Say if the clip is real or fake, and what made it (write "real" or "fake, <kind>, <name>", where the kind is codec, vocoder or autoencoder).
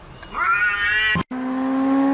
real